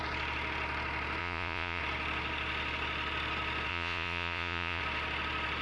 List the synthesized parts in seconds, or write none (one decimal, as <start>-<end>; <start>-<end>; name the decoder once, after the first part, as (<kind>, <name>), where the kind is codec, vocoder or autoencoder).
1.2-1.8 (vocoder, Vocos); 3.7-4.8

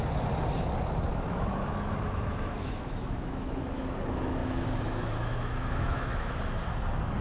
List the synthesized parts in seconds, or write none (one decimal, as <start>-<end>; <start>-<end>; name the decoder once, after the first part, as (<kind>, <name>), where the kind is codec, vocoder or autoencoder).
1.1-3.8 (autoencoder, DAC-VAE); 4.4-6.4

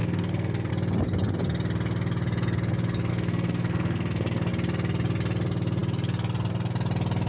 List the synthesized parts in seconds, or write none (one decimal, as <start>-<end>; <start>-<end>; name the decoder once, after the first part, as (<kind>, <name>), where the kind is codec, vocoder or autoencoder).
0.0-0.7 (codec, SNAC); 3.1-4.5

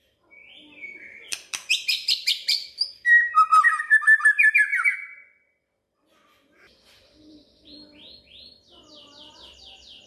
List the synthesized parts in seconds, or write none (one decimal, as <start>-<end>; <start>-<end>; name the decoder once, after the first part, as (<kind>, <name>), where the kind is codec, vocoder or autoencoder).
0.0-4.7 (vocoder, BigVGAN v2); 5.9-10.1